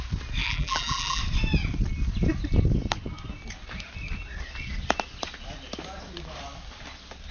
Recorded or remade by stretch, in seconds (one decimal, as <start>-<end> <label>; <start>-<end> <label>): 0.0-0.4 recorded; 0.4-1.2 remade; 1.2-7.3 recorded